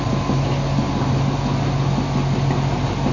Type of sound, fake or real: real